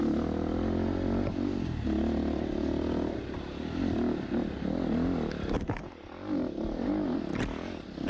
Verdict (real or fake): real